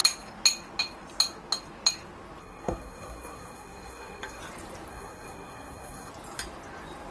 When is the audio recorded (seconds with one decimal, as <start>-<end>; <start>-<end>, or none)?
0.0-2.4; 4.4-4.9; 6.1-7.1